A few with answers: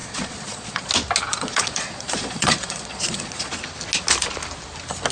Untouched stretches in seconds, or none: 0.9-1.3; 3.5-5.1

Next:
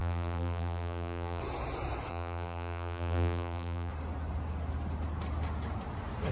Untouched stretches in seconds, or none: 1.4-2.1; 3.9-6.3

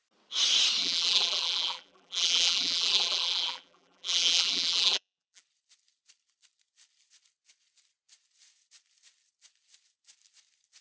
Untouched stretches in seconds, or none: 0.0-0.8; 5.4-10.8

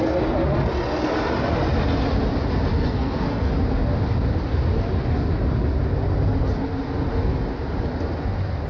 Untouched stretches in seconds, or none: 0.0-2.7; 3.5-8.7

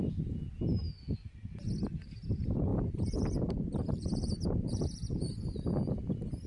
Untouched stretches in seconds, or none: 0.0-2.7; 5.3-6.5